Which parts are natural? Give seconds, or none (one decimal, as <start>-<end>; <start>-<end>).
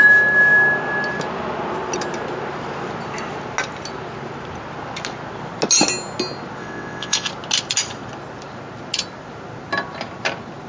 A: 0.0-6.6; 7.3-10.7